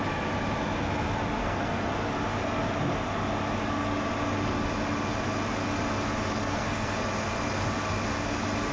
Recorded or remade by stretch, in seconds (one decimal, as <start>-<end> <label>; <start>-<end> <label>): 0.0-1.4 recorded; 1.4-1.9 remade; 1.9-6.4 recorded; 6.4-7.0 remade; 7.0-8.7 recorded